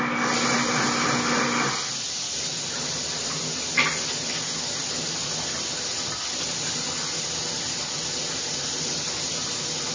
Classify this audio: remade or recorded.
recorded